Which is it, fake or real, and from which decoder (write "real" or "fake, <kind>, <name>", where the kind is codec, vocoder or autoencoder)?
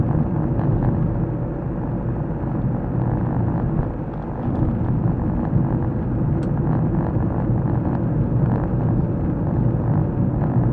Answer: real